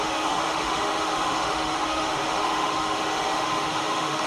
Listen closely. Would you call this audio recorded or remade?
remade